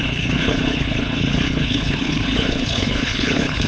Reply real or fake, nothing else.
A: fake